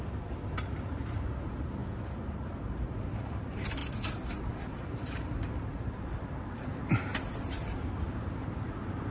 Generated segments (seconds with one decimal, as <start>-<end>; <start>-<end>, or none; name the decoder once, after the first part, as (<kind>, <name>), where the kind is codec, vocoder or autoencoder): 0.0-1.8 (vocoder, BigVGAN v2); 2.6-3.8; 4.4-9.1